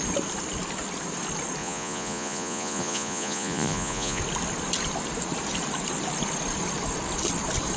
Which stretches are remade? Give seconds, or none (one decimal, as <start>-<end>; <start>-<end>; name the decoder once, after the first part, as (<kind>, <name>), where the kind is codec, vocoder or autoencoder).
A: 1.6-4.2 (vocoder, Vocos)